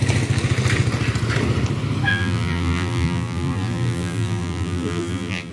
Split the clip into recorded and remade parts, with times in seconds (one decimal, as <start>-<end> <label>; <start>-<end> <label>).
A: 0.0-2.1 recorded; 2.1-5.5 remade